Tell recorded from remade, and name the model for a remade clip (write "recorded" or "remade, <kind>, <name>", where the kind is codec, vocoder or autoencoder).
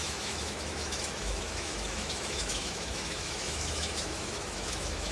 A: remade, autoencoder, DAC-VAE